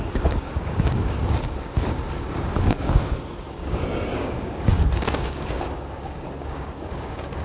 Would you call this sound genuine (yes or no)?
no